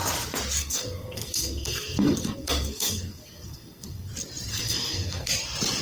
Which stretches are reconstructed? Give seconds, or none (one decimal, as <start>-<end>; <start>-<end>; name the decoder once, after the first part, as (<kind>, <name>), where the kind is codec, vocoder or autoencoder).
0.6-4.1 (codec, SNAC); 4.5-5.3